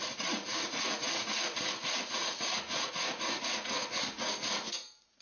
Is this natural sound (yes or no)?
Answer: no